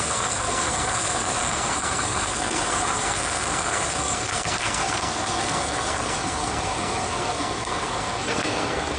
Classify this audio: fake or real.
fake